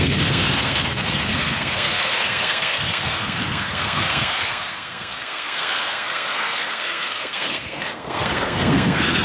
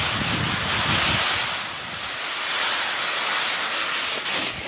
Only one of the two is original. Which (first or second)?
second